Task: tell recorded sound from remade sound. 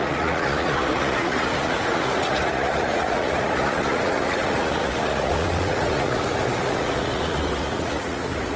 remade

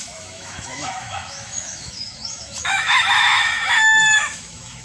remade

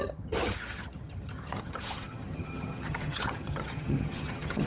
remade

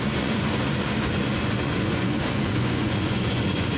remade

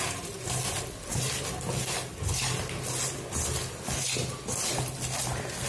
recorded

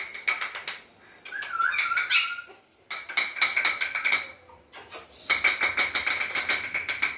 recorded